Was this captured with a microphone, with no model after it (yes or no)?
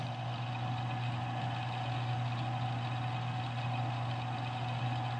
yes